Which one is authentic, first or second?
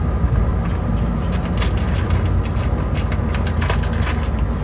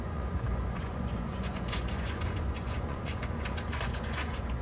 first